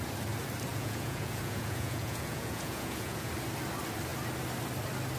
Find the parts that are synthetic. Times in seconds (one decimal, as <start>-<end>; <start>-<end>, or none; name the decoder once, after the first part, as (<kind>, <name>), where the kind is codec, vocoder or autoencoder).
0.7-3.3 (vocoder, Vocos)